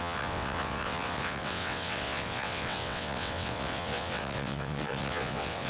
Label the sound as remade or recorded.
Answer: remade